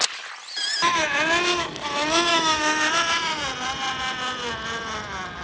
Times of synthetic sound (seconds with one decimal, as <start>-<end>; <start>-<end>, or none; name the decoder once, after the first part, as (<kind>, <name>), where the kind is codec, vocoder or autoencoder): 2.3-2.9 (autoencoder, DAC-VAE)